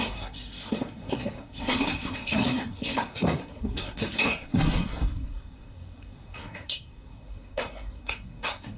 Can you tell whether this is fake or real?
fake